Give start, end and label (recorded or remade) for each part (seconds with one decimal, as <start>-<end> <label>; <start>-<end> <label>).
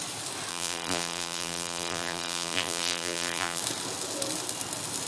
0.0-0.5 recorded; 0.5-3.6 remade; 3.6-5.1 recorded